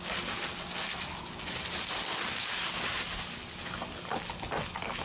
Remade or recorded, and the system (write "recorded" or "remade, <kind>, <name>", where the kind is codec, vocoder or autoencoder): recorded